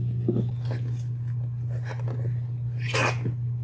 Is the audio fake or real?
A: real